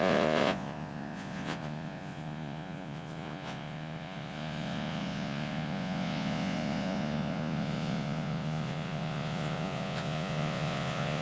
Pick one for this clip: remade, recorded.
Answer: remade